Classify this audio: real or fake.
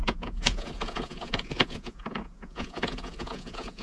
fake